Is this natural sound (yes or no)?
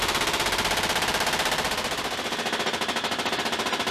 yes